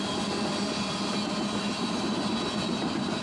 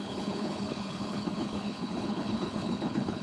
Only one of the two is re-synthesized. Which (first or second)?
second